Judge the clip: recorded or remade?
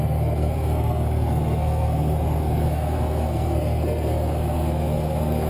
remade